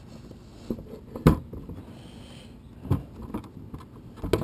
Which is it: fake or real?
real